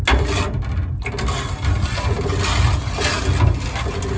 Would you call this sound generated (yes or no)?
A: no